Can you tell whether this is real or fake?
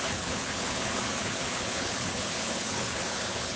fake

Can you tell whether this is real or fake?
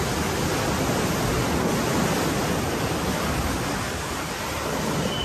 real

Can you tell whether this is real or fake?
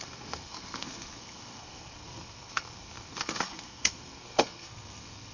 fake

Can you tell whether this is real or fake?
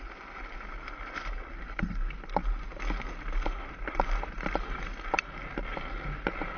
real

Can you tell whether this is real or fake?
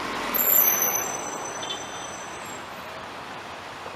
real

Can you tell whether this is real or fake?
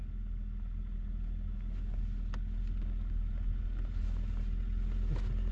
real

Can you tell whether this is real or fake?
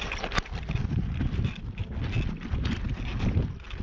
real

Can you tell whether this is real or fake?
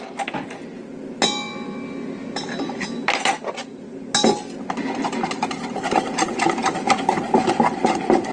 real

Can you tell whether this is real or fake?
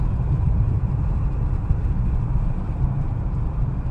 fake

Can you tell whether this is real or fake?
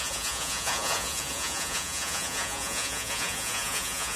fake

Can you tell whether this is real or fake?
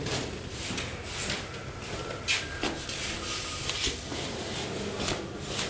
real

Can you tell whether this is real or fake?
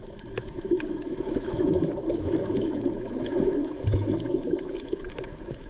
fake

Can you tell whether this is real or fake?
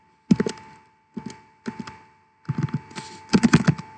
real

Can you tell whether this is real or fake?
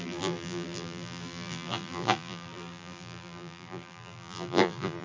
fake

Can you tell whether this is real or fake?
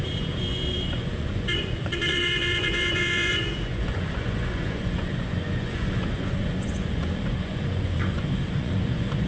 fake